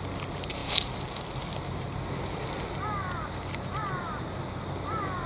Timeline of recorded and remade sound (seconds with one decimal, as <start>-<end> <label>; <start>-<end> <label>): 0.0-5.3 recorded